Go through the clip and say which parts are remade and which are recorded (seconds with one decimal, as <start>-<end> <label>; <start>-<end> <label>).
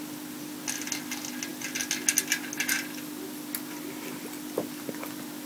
0.0-5.5 recorded